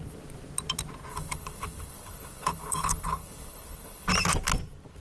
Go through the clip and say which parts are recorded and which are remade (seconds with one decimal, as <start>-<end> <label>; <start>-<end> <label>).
0.0-1.1 recorded; 1.1-4.1 remade; 4.1-5.0 recorded